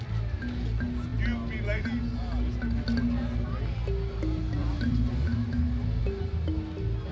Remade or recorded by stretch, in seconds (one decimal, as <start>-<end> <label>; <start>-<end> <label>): 0.0-7.1 recorded